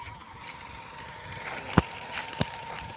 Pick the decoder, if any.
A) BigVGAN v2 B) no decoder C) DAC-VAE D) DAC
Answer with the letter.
B